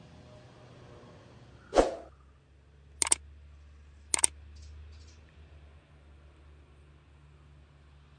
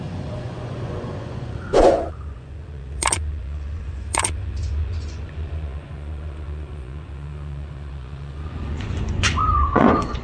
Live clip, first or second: first